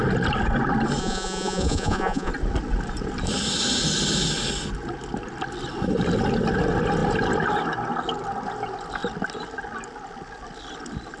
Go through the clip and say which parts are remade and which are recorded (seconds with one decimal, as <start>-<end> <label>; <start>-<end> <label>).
0.0-1.0 recorded; 1.0-2.3 remade; 2.3-11.2 recorded

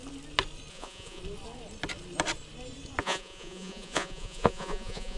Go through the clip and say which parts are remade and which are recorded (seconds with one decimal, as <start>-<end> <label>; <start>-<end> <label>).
0.0-0.7 recorded; 0.7-1.2 remade; 1.2-3.0 recorded; 3.0-5.2 remade